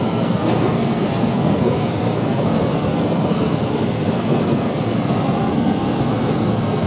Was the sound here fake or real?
fake